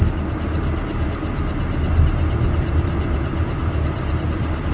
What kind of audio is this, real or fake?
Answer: real